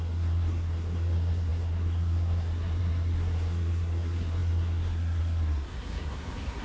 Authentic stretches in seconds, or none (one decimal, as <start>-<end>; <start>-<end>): none